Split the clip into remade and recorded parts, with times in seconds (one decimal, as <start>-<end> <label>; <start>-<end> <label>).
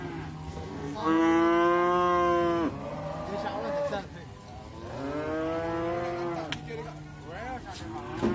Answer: 0.0-0.5 recorded; 0.5-1.2 remade; 1.2-8.3 recorded